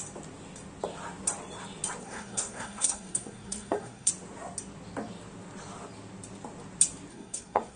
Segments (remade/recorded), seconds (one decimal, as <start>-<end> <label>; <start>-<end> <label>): 0.0-2.0 recorded; 2.0-4.1 remade; 4.1-7.1 recorded; 7.1-7.8 remade